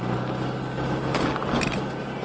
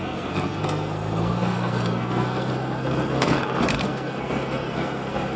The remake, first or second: second